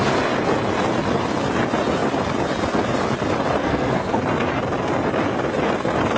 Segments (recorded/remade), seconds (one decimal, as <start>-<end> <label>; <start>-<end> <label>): 0.0-3.6 recorded; 3.6-4.2 remade; 4.2-6.2 recorded

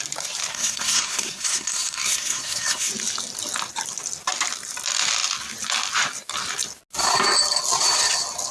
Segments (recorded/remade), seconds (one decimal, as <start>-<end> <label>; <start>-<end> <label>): 0.0-0.5 recorded; 0.5-2.9 remade; 2.9-8.5 recorded

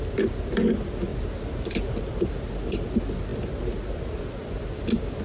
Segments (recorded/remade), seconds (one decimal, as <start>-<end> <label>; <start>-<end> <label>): 0.0-5.2 recorded

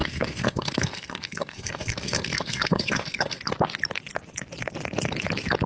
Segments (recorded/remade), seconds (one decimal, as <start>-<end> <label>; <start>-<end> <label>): 0.0-3.4 remade; 3.4-5.7 recorded

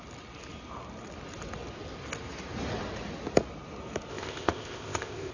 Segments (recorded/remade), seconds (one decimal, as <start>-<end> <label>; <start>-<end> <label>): 0.0-4.1 recorded; 4.1-5.3 remade

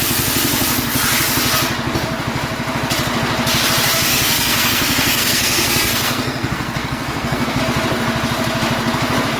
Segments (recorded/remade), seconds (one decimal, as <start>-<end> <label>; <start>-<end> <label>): 0.0-4.1 recorded; 4.1-7.6 remade; 7.6-9.4 recorded

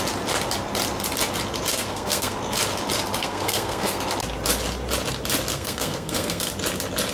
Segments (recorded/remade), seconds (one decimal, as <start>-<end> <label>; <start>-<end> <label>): 0.0-1.7 recorded; 1.7-2.4 remade; 2.4-3.2 recorded; 3.2-4.0 remade; 4.0-5.5 recorded; 5.5-6.5 remade; 6.5-7.1 recorded